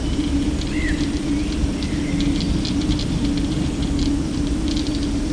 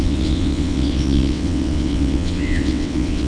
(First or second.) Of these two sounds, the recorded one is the first